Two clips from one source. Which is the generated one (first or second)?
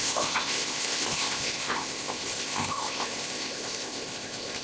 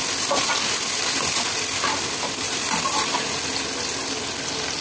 first